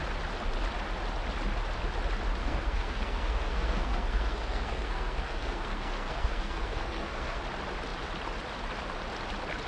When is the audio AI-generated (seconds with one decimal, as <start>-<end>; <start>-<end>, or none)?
2.4-7.4